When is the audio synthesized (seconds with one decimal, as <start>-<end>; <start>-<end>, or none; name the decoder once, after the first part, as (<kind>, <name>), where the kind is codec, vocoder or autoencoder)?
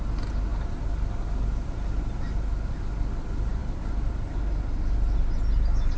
none